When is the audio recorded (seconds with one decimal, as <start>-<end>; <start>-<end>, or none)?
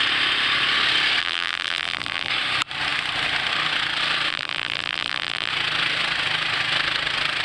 0.0-1.2; 2.3-4.3; 5.5-7.4